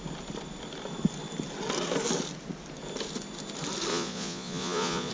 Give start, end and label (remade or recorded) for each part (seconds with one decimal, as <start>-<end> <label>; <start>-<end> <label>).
0.0-3.9 recorded; 3.9-5.1 remade